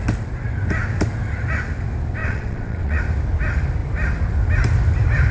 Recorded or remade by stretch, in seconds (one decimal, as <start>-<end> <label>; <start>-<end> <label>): 0.0-2.2 recorded; 2.2-3.0 remade; 3.0-5.3 recorded